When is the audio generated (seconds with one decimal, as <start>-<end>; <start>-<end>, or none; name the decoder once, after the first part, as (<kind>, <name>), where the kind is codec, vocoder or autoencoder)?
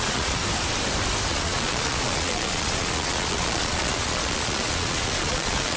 0.0-0.4 (vocoder, Vocos); 1.3-5.8